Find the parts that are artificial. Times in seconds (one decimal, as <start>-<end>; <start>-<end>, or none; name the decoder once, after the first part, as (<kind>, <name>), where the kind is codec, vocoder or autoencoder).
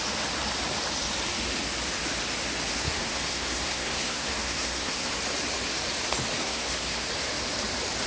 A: 2.7-5.1 (codec, SNAC); 6.4-7.1